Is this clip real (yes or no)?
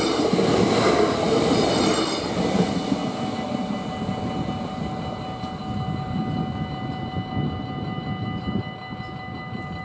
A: yes